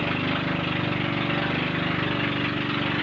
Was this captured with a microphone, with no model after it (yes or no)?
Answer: yes